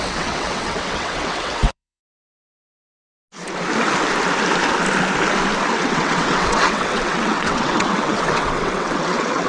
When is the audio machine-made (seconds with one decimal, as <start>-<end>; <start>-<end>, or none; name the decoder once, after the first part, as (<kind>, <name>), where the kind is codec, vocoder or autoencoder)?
0.0-2.0 (vocoder, WaveNeXt); 5.7-9.5